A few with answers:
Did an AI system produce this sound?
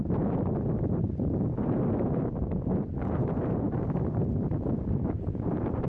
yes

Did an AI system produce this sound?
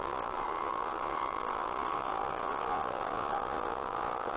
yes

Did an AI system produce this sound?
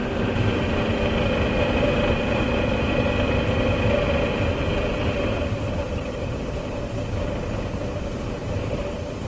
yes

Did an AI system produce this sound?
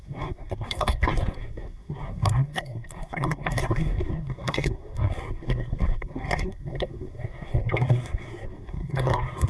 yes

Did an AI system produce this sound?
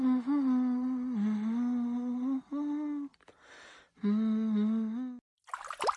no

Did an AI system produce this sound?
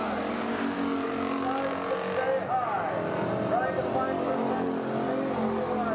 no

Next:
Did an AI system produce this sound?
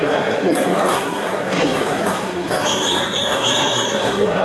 yes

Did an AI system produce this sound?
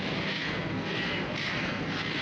yes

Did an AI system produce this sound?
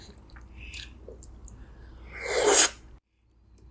no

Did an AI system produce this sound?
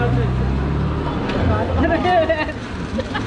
no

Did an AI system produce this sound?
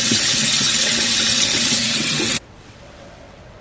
yes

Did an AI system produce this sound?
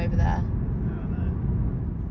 no